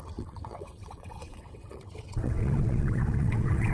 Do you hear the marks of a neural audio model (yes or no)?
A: yes